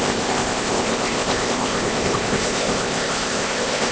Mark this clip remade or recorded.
remade